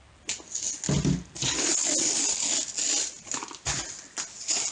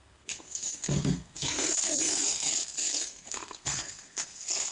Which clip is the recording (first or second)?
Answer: first